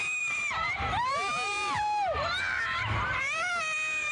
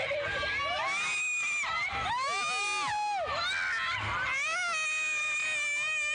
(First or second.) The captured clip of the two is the second